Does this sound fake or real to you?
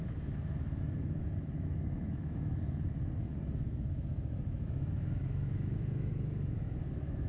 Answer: fake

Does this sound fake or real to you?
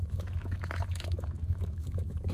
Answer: fake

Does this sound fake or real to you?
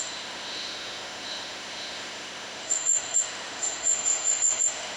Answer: fake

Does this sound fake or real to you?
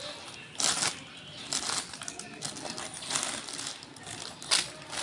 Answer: real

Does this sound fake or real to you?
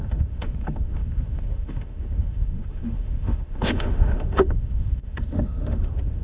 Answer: fake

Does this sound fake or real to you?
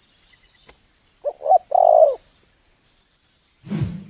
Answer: real